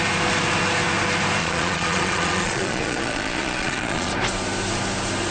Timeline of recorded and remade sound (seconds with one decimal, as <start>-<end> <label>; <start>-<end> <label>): 0.0-1.4 recorded; 1.4-4.1 remade; 4.1-5.3 recorded